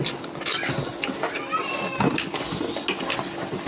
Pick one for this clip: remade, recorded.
recorded